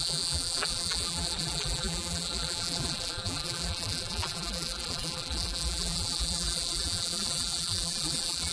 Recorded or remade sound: remade